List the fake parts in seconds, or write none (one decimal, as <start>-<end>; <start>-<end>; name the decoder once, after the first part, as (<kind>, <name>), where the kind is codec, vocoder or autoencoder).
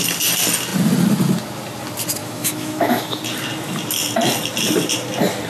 2.2-3.2 (autoencoder, DAC-VAE)